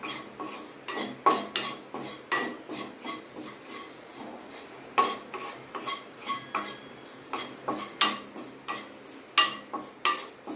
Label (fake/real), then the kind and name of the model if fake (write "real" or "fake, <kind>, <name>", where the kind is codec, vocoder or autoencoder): real